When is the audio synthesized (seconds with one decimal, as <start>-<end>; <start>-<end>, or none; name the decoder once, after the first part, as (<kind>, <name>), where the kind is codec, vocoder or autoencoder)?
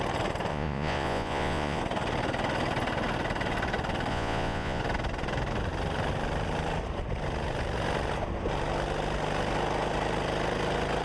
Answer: 0.5-1.8 (vocoder, Vocos); 4.1-4.8